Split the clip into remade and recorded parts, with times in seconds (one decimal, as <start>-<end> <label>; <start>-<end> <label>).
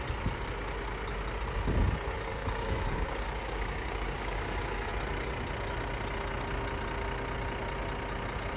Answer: 0.0-2.3 recorded; 2.3-4.9 remade; 4.9-8.6 recorded